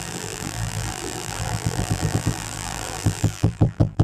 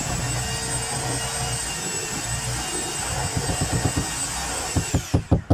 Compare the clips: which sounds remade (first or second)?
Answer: first